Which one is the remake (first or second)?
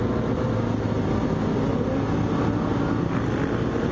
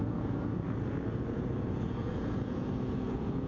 second